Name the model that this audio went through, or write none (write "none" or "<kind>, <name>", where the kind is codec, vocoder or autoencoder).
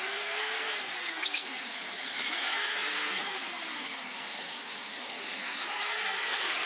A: codec, SNAC